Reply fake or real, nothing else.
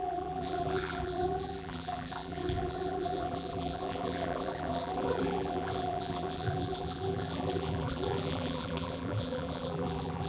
fake